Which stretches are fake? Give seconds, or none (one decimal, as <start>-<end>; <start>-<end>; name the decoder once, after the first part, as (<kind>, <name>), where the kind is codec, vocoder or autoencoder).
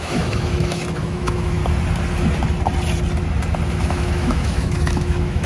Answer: 0.0-1.6 (autoencoder, DAC-VAE); 3.7-5.5